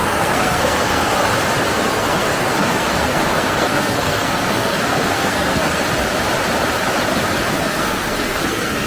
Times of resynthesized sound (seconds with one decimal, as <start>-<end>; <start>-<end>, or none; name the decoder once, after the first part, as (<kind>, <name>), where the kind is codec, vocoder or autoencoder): 0.0-1.1 (codec, SNAC); 1.7-5.8; 7.5-8.9